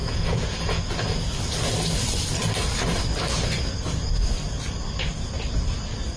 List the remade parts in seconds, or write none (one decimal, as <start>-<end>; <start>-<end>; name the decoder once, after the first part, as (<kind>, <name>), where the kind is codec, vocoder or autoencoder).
0.0-0.8 (vocoder, Vocos)